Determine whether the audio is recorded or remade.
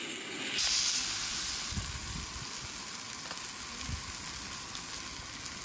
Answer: recorded